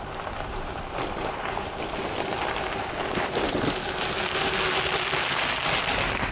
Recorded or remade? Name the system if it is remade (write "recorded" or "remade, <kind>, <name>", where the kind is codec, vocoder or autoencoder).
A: recorded